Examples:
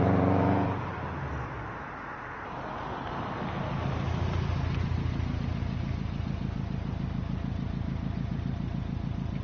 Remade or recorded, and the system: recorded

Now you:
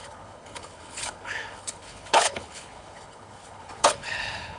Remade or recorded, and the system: remade, codec, HILCodec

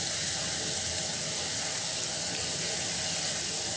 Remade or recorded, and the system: recorded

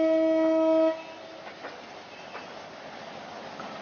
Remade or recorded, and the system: recorded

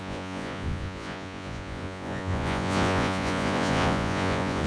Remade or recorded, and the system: remade, vocoder, Vocos